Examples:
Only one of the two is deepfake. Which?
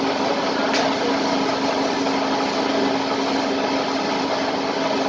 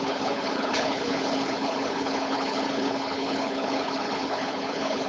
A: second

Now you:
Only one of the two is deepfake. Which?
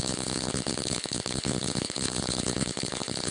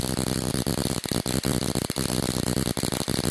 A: first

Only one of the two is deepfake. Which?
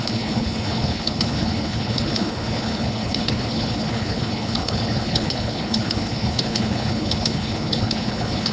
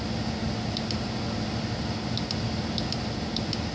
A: first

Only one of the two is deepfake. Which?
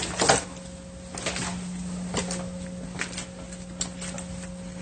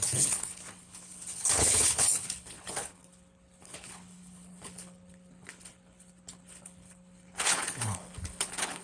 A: second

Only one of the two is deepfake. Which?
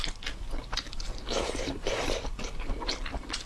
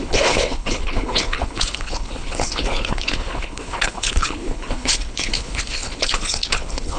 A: second